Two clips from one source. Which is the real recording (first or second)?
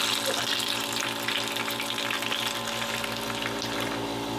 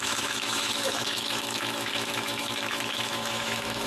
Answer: first